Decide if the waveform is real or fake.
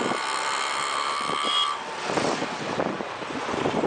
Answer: real